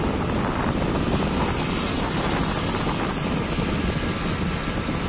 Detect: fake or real real